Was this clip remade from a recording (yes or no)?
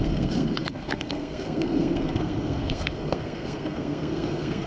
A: yes